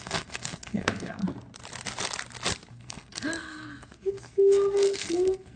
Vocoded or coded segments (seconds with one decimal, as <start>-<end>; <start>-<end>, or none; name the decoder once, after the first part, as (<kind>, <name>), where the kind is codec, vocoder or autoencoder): 0.0-1.2 (codec, SNAC); 2.7-5.6